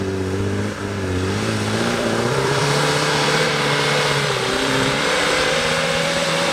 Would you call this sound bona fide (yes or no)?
no